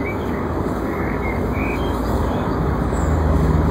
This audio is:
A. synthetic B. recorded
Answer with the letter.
A